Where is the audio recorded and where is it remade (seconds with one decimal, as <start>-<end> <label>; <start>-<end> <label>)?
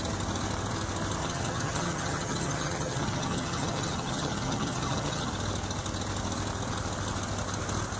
0.0-1.2 recorded; 1.2-5.3 remade; 5.3-8.0 recorded